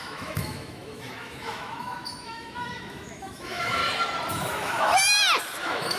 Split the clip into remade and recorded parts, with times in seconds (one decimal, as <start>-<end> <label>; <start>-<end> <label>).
0.0-3.8 remade; 3.8-4.3 recorded; 4.3-4.9 remade; 4.9-5.6 recorded; 5.6-6.0 remade

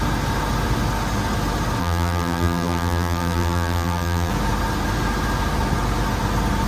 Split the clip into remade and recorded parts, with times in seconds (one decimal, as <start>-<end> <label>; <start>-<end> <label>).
0.0-1.8 recorded; 1.8-4.3 remade; 4.3-6.7 recorded

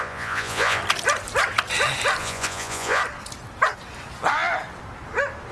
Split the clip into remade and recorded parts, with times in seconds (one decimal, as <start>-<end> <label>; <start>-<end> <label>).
0.0-0.8 remade; 0.8-2.2 recorded; 2.2-3.0 remade; 3.0-5.5 recorded

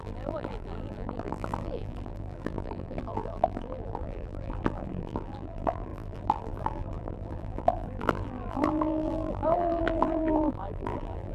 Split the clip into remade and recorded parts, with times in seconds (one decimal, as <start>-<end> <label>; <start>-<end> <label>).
0.0-11.3 remade